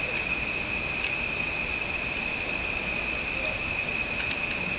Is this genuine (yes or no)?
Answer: yes